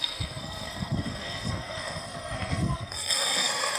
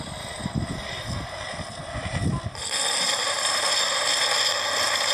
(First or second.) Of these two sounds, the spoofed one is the first